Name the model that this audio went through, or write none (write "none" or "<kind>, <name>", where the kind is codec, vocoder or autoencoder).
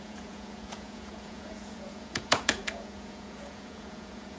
vocoder, Vocos